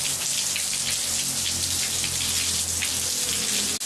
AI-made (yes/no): no